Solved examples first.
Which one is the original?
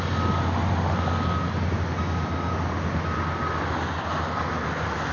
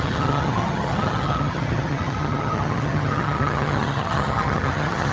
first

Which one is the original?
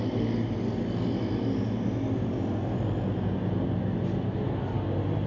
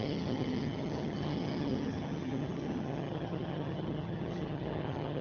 first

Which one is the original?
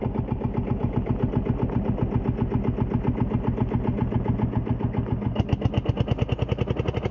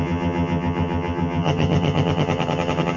first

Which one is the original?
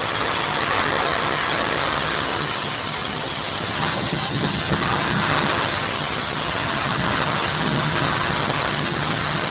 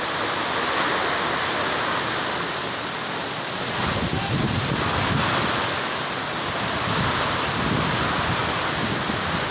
second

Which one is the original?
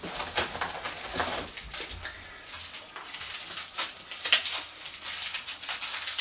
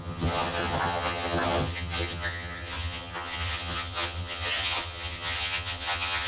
first